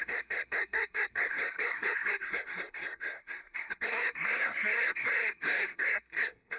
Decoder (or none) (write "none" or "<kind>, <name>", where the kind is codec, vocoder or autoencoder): codec, SNAC